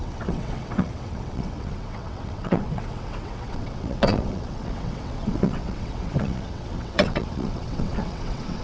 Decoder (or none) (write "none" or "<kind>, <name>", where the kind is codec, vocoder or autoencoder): vocoder, WaveNeXt